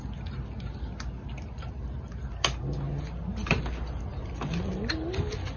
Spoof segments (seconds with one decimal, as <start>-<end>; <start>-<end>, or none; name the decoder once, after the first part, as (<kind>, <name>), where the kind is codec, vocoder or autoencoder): none